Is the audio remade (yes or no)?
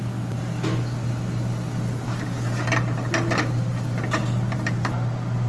no